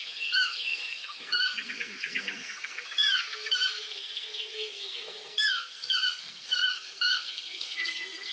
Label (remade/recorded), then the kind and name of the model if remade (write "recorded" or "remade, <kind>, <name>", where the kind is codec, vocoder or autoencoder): remade, codec, SNAC